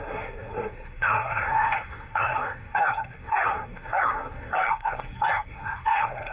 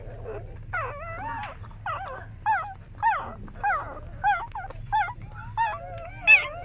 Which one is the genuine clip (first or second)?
second